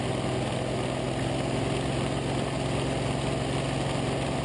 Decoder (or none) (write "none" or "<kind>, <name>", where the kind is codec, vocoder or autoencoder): none